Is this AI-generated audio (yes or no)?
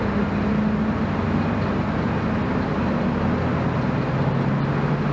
no